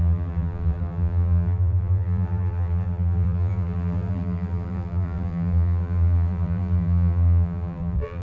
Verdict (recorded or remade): remade